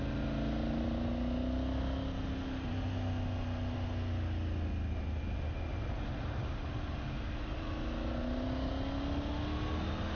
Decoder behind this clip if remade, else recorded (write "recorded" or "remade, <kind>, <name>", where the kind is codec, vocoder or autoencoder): recorded